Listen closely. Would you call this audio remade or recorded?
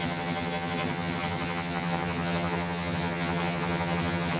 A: remade